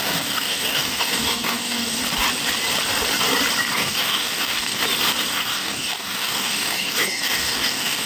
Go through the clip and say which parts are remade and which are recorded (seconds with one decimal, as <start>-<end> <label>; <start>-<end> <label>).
0.0-2.0 remade; 2.0-3.7 recorded; 3.7-4.8 remade; 4.8-5.3 recorded; 5.3-8.1 remade